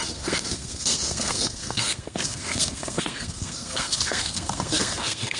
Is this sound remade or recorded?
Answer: remade